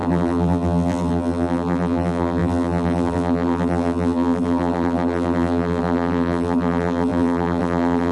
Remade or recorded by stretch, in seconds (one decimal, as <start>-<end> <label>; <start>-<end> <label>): 0.0-8.1 remade